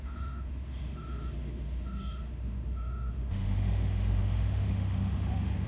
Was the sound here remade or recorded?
remade